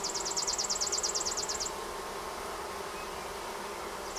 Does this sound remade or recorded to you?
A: recorded